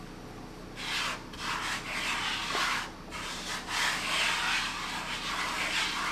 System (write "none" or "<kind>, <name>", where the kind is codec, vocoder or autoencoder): none